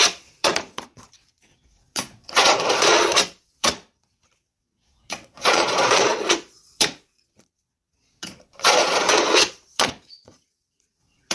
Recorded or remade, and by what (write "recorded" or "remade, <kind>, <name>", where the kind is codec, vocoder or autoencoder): remade, vocoder, Vocos